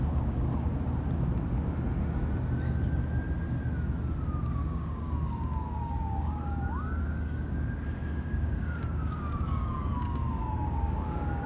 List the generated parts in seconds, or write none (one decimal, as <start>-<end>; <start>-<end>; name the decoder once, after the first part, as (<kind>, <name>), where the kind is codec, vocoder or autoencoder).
0.0-0.7 (codec, DAC); 4.5-11.5